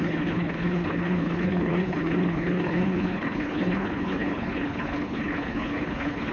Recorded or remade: remade